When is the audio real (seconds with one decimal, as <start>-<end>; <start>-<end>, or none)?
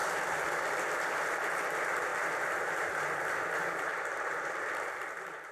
0.0-2.1; 4.7-5.5